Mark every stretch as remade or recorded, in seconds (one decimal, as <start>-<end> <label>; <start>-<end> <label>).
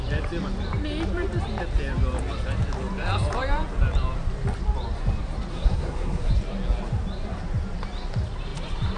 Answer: 0.0-5.5 recorded; 5.5-6.3 remade; 6.3-9.0 recorded